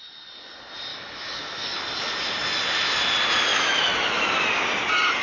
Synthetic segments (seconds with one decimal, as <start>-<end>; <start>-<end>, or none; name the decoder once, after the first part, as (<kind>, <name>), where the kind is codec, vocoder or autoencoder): 0.9-1.8 (autoencoder, DAC-VAE); 3.5-4.3